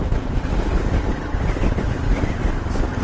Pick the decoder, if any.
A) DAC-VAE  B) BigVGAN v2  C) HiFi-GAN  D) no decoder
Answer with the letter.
D